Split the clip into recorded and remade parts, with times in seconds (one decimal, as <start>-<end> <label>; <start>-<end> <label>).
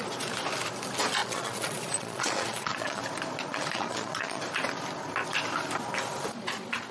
0.0-1.2 recorded; 1.2-3.0 remade; 3.0-3.5 recorded; 3.5-4.4 remade; 4.4-6.9 recorded